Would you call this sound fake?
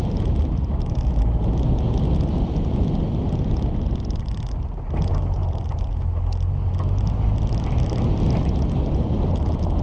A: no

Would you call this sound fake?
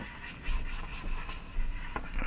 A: no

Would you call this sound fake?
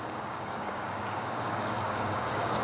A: yes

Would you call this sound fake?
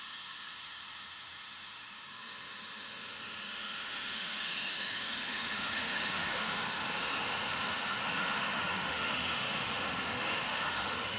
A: yes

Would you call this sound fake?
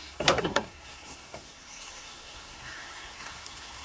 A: yes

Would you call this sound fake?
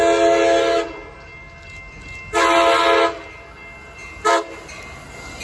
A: no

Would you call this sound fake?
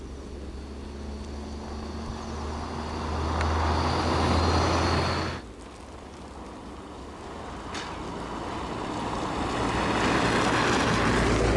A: no